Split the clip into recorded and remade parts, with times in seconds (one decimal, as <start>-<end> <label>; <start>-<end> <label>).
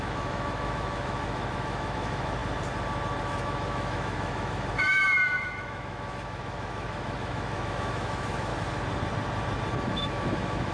0.0-2.4 remade; 2.4-3.2 recorded; 3.2-8.5 remade; 8.5-9.8 recorded; 9.8-10.7 remade